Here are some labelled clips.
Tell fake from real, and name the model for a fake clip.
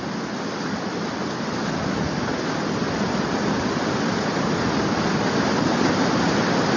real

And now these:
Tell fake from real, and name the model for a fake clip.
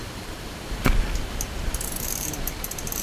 fake, vocoder, BigVGAN v2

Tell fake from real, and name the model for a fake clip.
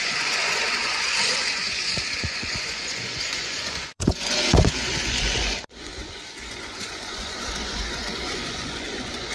fake, vocoder, Vocos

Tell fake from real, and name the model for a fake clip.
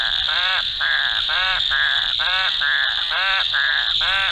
real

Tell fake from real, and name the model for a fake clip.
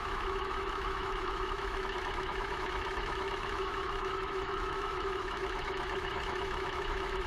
fake, autoencoder, DAC-VAE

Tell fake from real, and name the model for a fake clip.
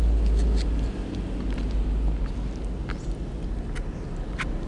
real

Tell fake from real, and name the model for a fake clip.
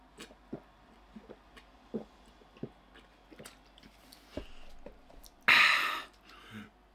real